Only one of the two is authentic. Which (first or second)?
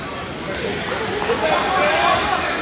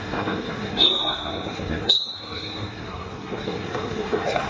first